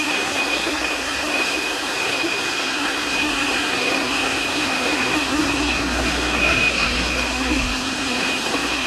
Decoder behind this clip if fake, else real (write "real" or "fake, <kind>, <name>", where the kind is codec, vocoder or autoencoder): fake, codec, SNAC